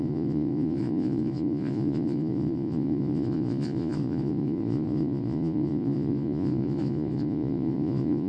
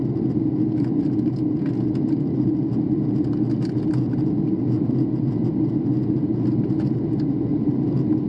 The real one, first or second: second